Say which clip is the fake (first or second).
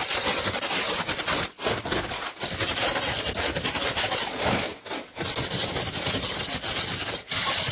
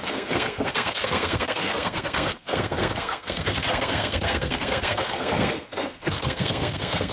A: second